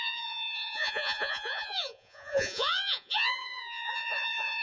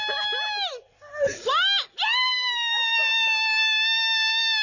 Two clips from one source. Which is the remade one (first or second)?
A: first